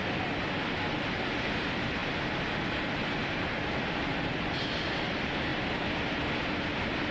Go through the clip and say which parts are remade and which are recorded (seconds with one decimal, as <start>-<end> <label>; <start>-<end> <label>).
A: 0.0-7.1 recorded